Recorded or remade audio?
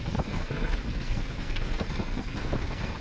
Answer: remade